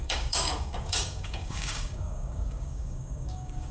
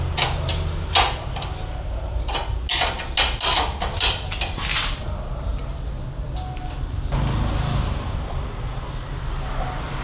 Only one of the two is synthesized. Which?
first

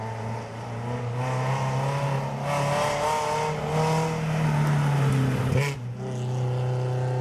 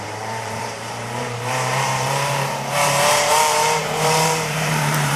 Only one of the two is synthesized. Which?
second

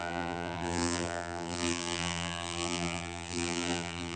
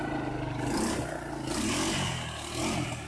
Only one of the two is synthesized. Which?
first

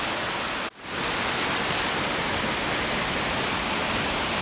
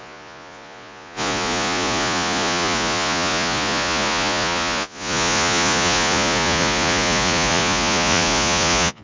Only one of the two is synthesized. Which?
second